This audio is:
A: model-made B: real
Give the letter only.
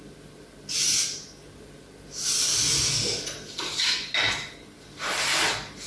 B